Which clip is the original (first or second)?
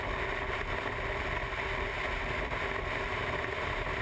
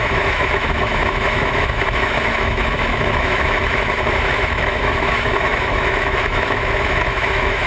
first